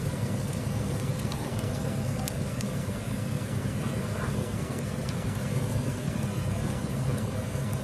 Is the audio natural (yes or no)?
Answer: no